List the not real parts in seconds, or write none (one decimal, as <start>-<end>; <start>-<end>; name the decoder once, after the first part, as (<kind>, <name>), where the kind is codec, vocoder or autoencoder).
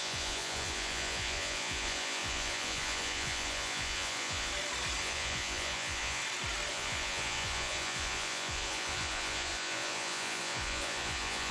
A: 0.0-4.5 (vocoder, Vocos); 5.0-6.2; 6.7-11.5